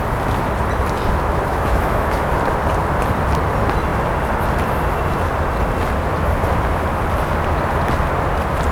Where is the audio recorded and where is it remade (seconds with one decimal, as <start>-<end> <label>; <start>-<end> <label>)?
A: 0.0-1.5 recorded; 1.5-2.3 remade; 2.3-8.7 recorded